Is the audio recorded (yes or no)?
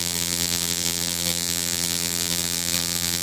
no